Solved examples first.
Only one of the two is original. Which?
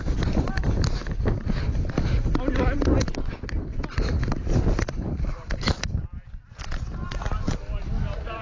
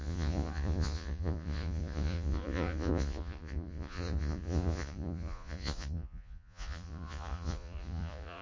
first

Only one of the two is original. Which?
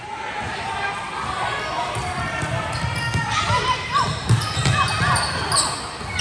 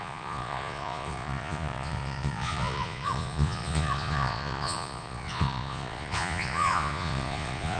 first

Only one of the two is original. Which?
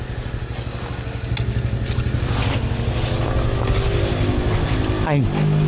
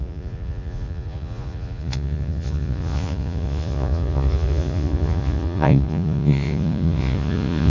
first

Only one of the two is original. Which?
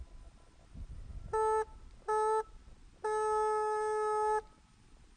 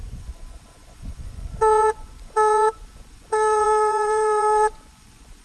first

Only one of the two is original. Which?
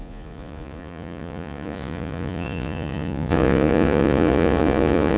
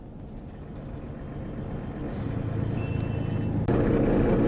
second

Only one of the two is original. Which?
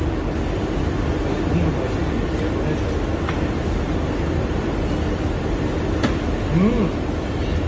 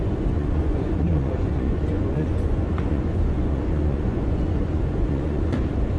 first